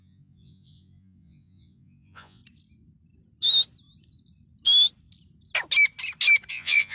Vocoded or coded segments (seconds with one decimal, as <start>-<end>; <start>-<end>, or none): 0.0-2.4; 6.5-6.9